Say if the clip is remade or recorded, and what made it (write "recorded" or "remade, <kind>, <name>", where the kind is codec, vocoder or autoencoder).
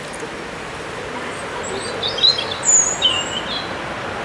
recorded